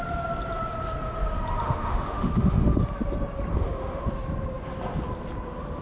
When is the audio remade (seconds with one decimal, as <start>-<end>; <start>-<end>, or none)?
1.6-2.8; 3.5-4.1